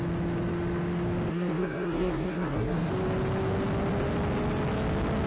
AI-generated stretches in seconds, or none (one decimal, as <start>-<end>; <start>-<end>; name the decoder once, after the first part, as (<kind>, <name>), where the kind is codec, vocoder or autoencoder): 1.3-2.9 (codec, SNAC)